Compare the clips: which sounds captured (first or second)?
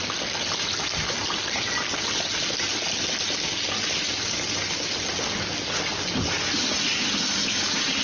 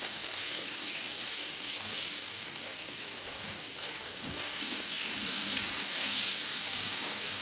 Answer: first